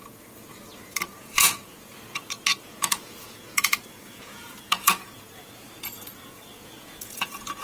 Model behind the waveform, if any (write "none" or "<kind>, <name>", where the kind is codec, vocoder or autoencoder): vocoder, Vocos